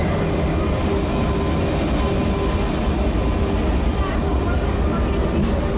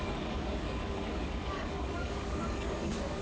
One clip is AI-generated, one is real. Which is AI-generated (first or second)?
second